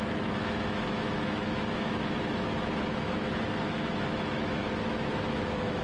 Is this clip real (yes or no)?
no